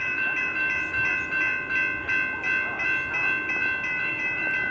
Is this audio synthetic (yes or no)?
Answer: no